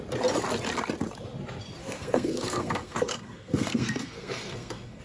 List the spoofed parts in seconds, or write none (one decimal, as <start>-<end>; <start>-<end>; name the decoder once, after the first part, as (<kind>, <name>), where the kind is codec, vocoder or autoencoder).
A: 1.8-5.0 (codec, SNAC)